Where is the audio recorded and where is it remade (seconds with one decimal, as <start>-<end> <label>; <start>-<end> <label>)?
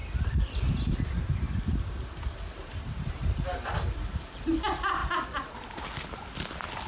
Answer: 0.0-6.9 recorded